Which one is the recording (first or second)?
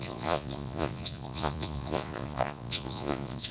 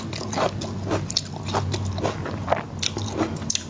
second